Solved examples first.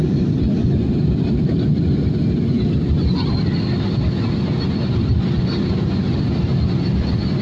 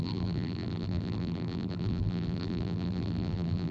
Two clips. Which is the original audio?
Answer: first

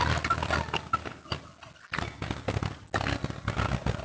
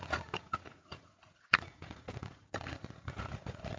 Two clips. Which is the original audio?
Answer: first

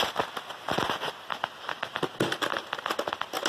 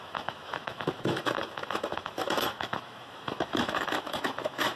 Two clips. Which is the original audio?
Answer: first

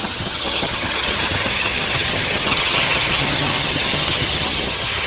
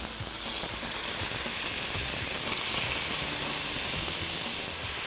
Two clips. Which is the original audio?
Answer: second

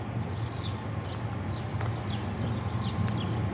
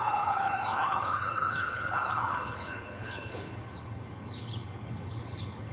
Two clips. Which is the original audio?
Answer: first